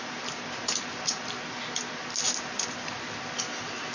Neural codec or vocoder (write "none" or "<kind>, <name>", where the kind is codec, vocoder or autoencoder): none